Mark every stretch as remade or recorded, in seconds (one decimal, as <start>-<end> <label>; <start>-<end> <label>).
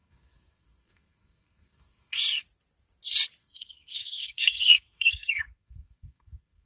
0.0-2.2 remade; 2.2-3.4 recorded; 3.4-6.7 remade